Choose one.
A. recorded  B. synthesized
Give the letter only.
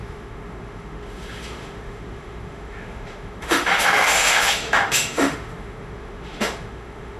B